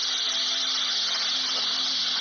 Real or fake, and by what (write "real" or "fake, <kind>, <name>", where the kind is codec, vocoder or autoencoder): real